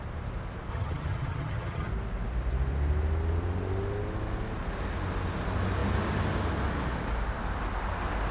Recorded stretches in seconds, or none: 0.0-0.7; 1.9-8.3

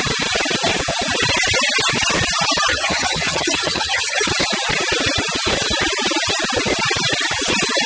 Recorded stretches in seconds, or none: 0.0-2.7; 4.3-7.9

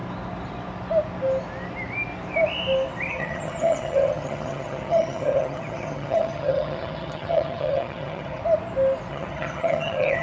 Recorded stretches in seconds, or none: 0.0-3.1; 8.4-9.1

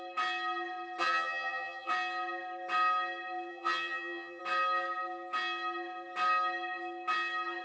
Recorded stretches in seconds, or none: 0.0-1.0; 1.9-3.5; 4.4-7.6

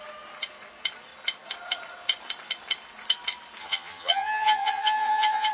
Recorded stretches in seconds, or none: 0.0-3.6

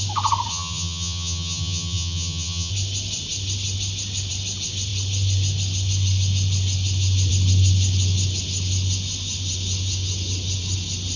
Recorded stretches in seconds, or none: 0.0-0.5; 2.7-11.2